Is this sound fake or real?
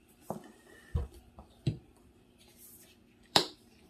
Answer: fake